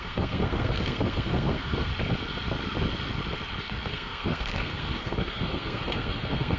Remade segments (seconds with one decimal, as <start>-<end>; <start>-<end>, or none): 0.0-1.9; 3.6-6.6